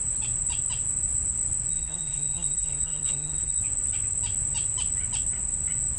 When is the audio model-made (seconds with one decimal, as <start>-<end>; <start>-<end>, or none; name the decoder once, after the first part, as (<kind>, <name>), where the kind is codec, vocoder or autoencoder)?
1.7-3.6 (codec, SNAC)